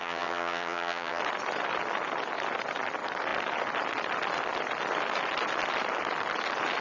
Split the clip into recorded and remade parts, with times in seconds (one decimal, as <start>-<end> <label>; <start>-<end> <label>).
0.0-1.2 remade; 1.2-6.8 recorded